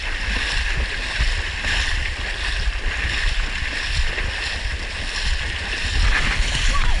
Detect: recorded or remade recorded